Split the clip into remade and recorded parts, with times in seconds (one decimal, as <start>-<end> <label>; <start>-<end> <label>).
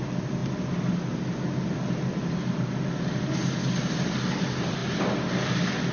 0.0-5.9 recorded